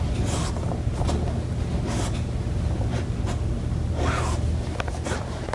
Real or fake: real